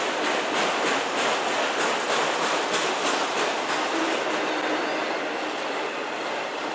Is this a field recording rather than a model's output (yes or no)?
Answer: yes